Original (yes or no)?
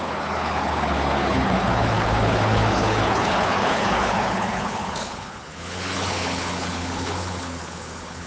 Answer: no